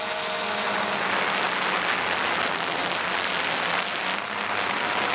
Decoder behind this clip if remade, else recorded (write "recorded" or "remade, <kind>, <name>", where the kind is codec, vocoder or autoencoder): recorded